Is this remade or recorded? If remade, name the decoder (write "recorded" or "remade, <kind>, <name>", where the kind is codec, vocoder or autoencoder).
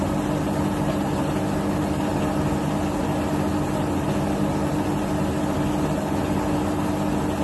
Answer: recorded